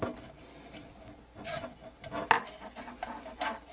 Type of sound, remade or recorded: recorded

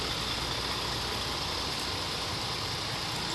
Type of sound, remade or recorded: recorded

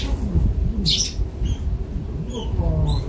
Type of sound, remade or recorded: recorded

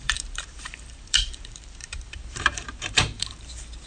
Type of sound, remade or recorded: remade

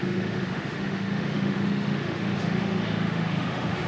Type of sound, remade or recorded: remade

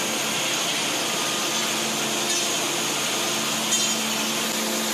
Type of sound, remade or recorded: recorded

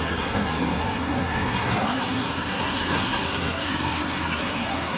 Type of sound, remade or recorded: remade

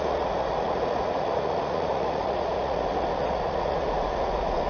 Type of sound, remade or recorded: remade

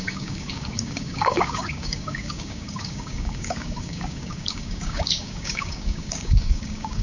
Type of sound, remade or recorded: remade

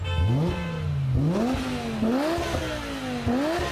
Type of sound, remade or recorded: recorded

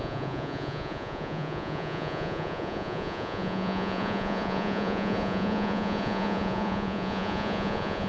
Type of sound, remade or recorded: remade